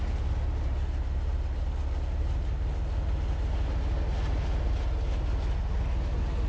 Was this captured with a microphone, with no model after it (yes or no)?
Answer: yes